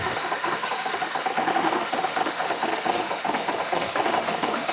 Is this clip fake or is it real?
fake